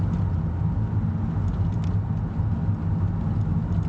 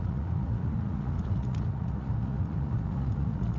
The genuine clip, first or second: first